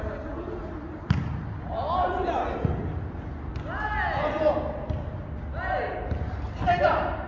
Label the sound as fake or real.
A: real